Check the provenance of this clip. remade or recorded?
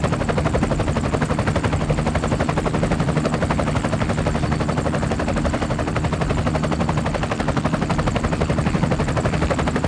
recorded